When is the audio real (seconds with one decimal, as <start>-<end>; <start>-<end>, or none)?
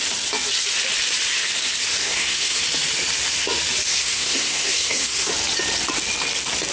0.0-2.0; 2.6-3.9; 5.3-6.7